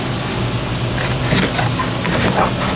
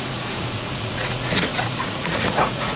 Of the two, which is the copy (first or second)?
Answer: second